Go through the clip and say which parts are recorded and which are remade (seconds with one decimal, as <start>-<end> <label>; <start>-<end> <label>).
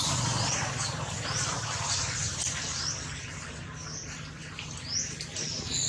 0.0-5.9 recorded